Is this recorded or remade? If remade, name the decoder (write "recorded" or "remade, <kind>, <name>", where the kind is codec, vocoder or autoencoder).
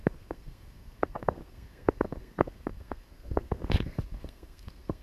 remade, codec, SNAC